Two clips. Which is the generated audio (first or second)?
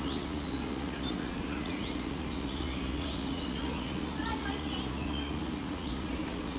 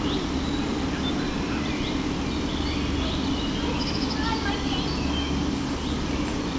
first